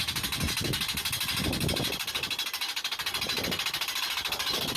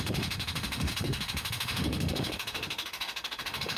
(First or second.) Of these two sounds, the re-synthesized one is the second